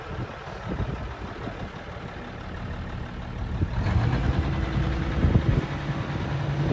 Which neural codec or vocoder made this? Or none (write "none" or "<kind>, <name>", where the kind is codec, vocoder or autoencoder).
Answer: none